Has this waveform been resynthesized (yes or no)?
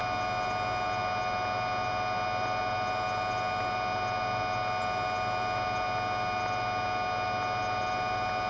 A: no